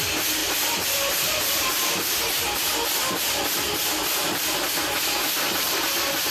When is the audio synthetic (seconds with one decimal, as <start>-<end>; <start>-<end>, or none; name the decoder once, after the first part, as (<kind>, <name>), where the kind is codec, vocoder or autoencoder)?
0.4-2.4 (vocoder, BigVGAN v2)

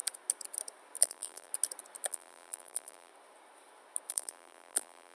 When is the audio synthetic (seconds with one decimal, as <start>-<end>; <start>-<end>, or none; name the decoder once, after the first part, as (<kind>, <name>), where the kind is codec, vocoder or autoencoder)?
1.0-1.5 (vocoder, BigVGAN v2); 2.1-3.1; 4.1-5.1

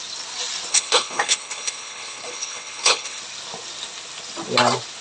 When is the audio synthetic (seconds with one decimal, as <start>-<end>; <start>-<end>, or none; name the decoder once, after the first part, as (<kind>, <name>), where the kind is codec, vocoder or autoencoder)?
0.7-3.2 (codec, HILCodec)

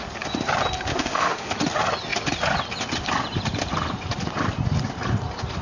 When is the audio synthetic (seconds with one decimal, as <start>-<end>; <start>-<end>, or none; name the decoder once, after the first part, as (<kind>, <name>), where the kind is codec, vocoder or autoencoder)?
0.9-1.5 (autoencoder, DAC-VAE)

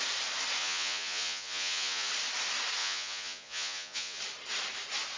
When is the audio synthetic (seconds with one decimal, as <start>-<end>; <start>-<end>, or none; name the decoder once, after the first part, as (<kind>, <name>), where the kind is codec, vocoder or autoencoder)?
0.6-2.1 (vocoder, Vocos); 2.8-4.2